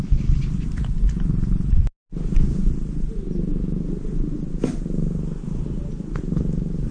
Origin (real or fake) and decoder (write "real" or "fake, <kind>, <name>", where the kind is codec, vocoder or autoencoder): real